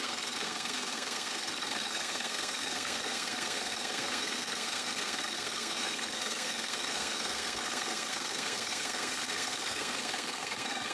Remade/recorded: remade